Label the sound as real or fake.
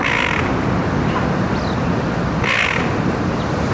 real